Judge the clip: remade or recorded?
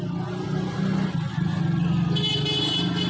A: recorded